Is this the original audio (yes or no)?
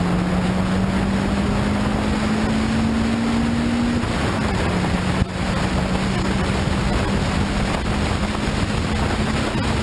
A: yes